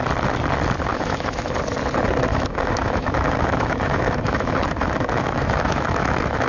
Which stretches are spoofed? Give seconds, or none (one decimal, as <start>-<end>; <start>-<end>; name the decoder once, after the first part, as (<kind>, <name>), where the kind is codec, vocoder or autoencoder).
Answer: 0.9-1.6 (autoencoder, DAC-VAE); 2.3-6.5